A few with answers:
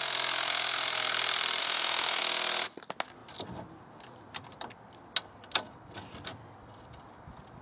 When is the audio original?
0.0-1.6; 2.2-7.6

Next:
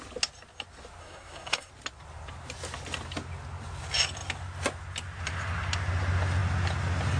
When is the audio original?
0.0-1.0; 1.7-7.2

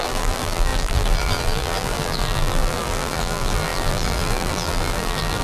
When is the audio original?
none

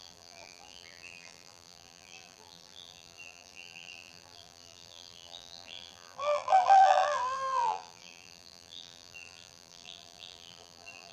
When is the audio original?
none